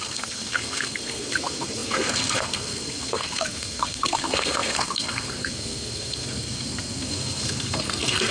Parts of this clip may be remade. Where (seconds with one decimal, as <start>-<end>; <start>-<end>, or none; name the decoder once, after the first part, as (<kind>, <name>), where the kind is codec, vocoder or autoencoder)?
0.0-8.3 (codec, SNAC)